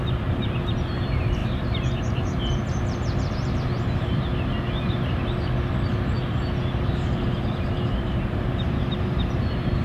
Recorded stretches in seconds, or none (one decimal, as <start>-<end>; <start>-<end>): 4.3-7.8